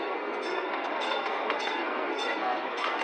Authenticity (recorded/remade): remade